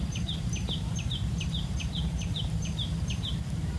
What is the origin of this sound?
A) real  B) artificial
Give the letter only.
B